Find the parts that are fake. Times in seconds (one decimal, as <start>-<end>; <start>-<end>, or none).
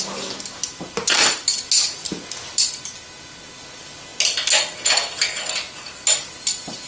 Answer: none